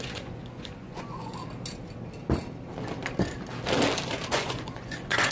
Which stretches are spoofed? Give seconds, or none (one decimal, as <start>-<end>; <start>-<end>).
0.0-1.4; 4.3-5.3